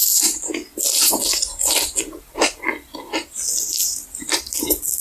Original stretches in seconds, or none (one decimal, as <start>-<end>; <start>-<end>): 0.0-3.9; 4.4-5.0